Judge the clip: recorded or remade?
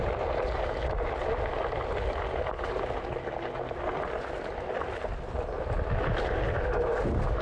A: recorded